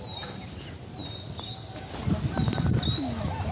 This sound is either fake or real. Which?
real